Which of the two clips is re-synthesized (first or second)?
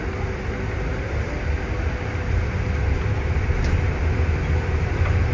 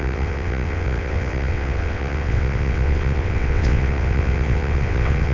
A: second